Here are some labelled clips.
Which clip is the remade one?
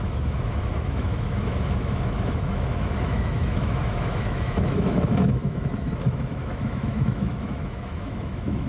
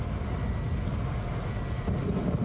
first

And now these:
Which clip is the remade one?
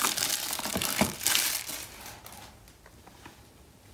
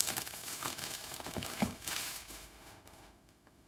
second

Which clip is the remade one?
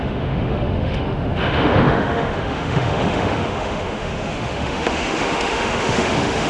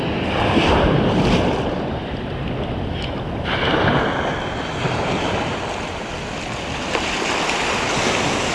first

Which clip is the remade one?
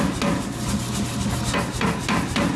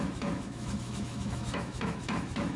second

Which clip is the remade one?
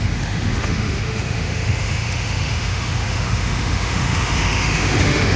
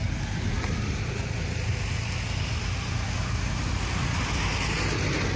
first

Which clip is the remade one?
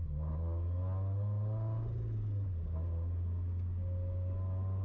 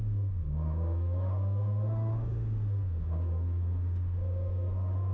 second